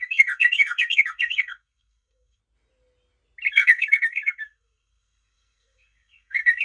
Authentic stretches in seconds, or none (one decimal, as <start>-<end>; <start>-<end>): 2.4-3.5